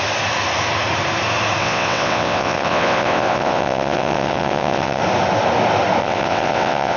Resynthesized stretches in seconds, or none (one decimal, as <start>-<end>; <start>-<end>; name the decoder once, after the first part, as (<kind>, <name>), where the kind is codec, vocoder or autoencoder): 1.6-5.0 (vocoder, WaveNeXt); 6.0-7.0